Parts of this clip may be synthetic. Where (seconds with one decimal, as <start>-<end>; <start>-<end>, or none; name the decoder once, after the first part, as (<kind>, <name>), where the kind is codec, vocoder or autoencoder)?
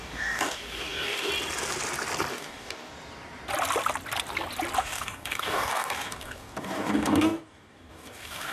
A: 0.0-1.3 (codec, DAC); 2.3-2.9; 4.8-8.5